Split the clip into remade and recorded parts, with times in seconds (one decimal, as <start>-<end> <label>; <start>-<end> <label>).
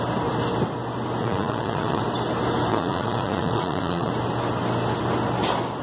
0.0-1.2 recorded; 1.2-2.0 remade; 2.0-2.7 recorded; 2.7-4.1 remade; 4.1-5.8 recorded